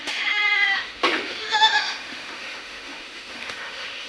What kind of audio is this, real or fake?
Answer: fake